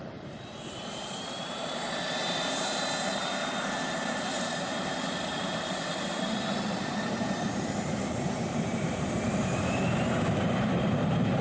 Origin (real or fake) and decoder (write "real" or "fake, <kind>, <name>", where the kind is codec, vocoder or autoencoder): fake, vocoder, BigVGAN v2